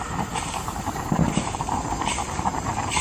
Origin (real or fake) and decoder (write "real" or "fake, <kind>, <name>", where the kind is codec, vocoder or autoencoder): fake, vocoder, BigVGAN v2